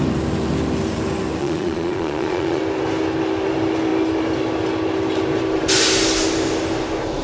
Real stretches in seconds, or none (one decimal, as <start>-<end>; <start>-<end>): 0.0-1.4; 2.6-7.2